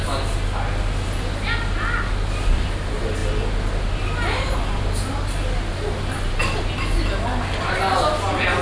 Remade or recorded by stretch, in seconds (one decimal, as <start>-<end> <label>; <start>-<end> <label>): 0.0-8.6 recorded